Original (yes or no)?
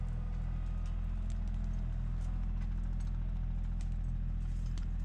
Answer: yes